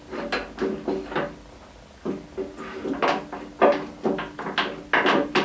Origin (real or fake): real